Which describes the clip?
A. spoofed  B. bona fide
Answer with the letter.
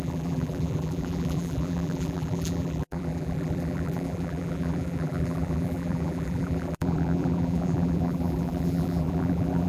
A